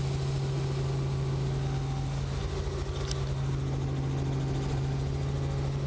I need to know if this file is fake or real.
real